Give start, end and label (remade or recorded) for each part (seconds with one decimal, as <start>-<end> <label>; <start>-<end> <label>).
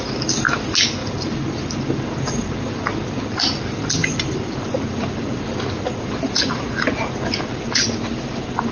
0.0-4.0 recorded; 4.0-8.7 remade